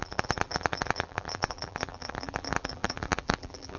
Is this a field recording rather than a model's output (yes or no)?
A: no